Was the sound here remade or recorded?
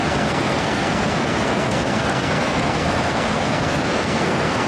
remade